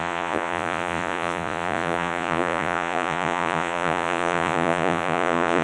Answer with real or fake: fake